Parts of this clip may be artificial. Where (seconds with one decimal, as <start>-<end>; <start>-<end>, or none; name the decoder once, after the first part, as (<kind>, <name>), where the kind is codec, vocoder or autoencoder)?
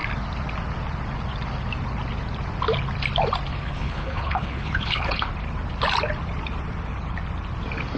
3.5-5.3 (codec, HILCodec)